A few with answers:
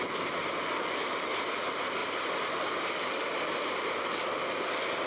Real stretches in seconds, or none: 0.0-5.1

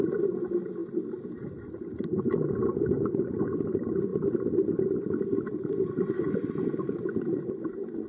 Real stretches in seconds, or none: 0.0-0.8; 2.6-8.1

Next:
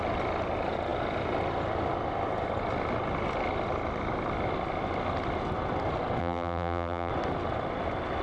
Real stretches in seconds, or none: 0.0-6.2; 7.1-8.2

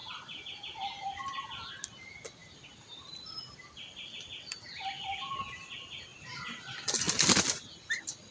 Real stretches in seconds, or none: 1.7-2.4; 5.4-6.1

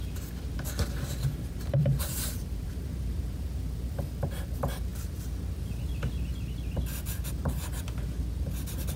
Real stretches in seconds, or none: 0.0-1.3; 4.1-9.0